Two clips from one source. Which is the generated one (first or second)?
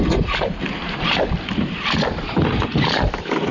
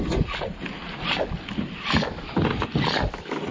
first